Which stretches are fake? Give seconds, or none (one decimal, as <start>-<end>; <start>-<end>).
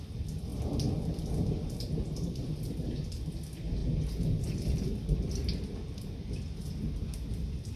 0.5-3.0